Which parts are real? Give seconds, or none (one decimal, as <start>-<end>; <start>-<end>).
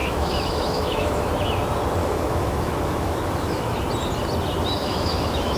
1.3-2.0; 3.8-4.8